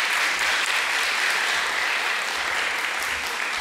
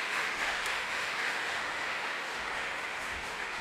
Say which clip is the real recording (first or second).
first